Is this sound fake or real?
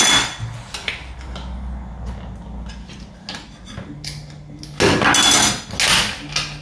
real